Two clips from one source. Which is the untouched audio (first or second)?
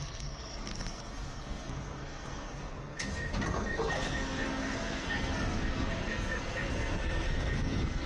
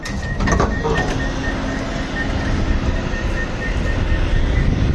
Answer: second